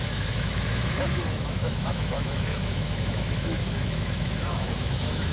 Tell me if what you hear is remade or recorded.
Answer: remade